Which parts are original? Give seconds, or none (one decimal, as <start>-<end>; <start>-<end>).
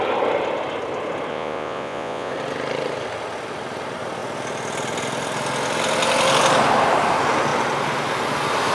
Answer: 0.0-1.3; 2.3-8.7